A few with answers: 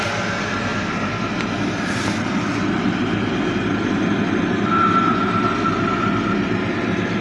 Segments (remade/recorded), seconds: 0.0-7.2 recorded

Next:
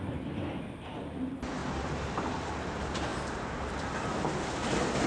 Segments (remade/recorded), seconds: 0.0-1.6 recorded; 1.6-2.3 remade; 2.3-3.1 recorded; 3.1-4.2 remade; 4.2-5.1 recorded

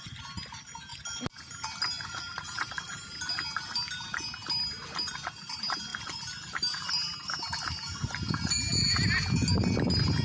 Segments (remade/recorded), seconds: 0.0-5.9 recorded; 5.9-6.9 remade; 6.9-10.2 recorded

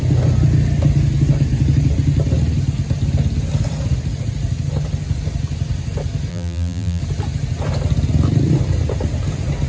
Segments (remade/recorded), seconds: 0.0-6.3 recorded; 6.3-7.0 remade; 7.0-9.7 recorded